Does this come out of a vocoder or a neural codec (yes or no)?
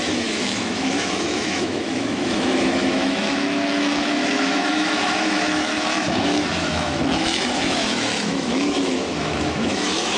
yes